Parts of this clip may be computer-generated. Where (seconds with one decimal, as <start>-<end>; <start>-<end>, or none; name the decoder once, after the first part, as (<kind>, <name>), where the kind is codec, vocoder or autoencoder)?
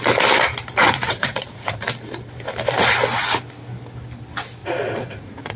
0.8-1.8 (vocoder, Vocos); 4.6-5.6